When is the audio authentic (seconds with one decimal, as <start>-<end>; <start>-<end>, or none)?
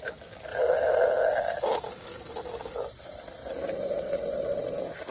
0.0-3.4; 4.0-5.1